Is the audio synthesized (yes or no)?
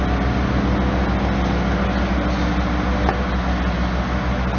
no